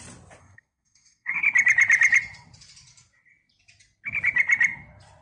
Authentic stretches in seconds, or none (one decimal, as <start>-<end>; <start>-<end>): 0.0-0.4; 1.4-5.2